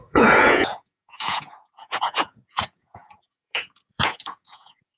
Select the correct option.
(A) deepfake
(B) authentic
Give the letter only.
A